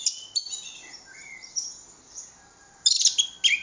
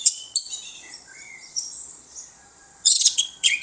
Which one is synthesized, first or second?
second